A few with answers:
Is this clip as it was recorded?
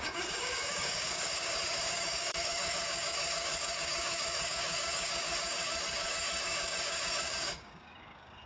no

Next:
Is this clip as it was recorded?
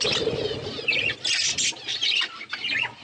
yes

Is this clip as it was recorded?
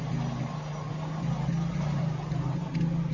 yes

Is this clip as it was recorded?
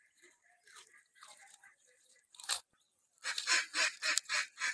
no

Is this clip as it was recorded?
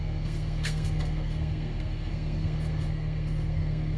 no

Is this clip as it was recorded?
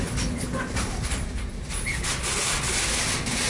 yes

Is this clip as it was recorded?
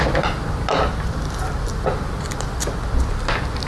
yes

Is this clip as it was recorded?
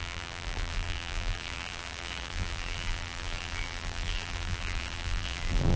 no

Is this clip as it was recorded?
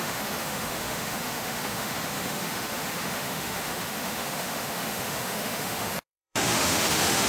no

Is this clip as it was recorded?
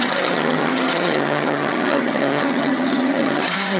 no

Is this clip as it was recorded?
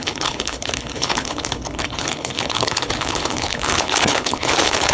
no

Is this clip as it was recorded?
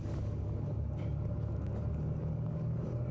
no